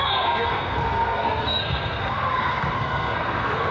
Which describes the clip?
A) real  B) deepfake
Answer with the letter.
B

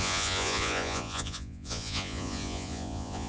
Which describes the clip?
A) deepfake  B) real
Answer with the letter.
A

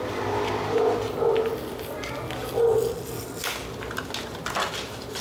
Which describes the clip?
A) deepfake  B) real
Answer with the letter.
B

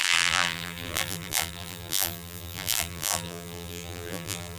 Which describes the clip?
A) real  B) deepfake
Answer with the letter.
B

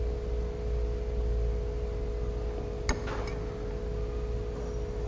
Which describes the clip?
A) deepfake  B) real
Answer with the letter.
B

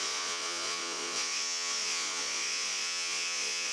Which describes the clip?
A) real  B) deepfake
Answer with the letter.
B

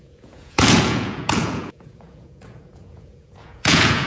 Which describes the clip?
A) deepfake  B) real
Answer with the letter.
A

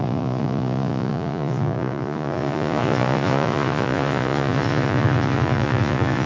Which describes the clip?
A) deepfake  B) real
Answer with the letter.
A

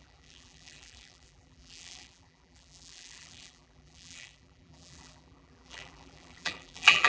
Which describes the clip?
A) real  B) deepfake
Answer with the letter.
B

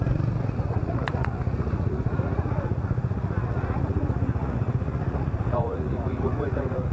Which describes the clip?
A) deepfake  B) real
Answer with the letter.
A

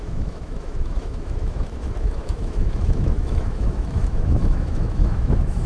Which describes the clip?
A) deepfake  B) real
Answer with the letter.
A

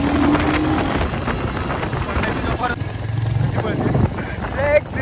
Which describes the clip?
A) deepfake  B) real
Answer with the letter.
B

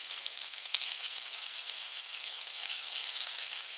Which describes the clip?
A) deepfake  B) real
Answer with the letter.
A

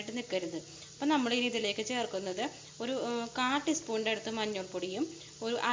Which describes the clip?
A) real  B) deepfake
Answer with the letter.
A